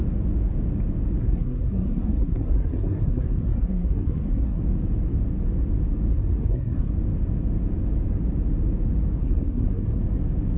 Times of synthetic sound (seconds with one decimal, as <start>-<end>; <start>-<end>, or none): 1.2-4.6; 6.1-6.9; 9.2-10.0